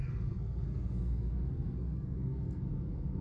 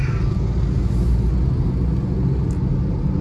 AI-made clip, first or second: first